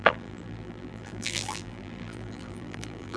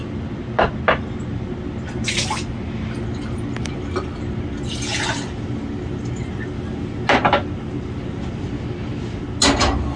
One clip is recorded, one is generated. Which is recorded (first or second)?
second